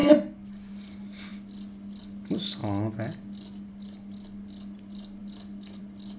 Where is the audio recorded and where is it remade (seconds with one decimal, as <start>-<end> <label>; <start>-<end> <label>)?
0.0-6.2 recorded